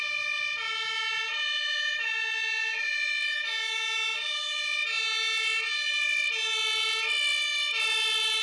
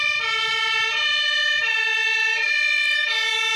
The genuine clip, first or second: first